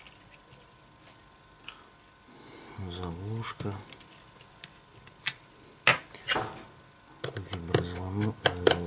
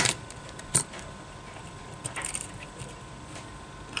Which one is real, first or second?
first